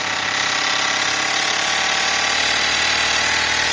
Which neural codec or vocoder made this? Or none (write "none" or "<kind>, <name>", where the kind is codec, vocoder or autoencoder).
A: none